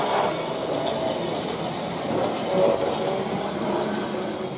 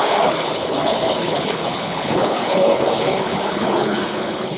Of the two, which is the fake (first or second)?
second